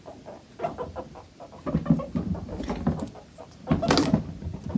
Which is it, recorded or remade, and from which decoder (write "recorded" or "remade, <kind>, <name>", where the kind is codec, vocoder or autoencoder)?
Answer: recorded